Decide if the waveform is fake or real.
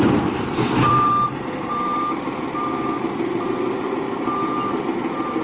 fake